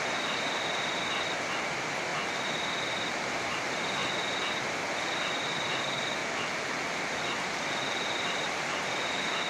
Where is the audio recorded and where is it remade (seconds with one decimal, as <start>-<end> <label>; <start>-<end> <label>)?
0.0-2.1 remade; 2.1-3.3 recorded; 3.3-4.0 remade; 4.0-5.5 recorded; 5.5-6.2 remade; 6.2-7.2 recorded; 7.2-9.5 remade